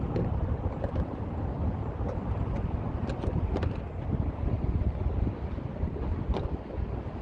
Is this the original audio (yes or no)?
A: yes